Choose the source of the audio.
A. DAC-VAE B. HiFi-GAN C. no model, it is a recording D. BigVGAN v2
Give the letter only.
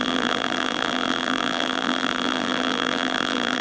D